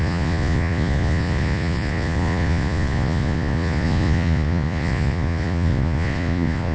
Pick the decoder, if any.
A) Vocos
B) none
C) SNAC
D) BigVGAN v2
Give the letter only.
A